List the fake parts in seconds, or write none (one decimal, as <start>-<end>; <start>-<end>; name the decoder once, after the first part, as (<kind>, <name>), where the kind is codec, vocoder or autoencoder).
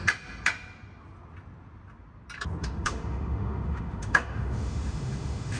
2.6-5.6 (autoencoder, DAC-VAE)